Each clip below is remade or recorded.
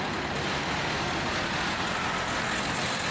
recorded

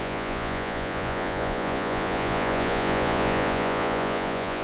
remade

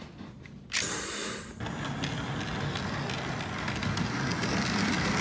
recorded